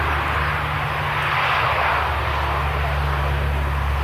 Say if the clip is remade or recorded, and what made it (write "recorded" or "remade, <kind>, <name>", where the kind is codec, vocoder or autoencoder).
recorded